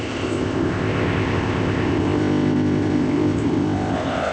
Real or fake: fake